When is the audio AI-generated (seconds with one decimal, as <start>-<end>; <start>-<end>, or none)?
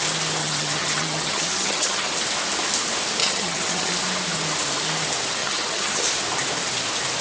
0.4-2.1; 3.2-3.9; 5.4-6.0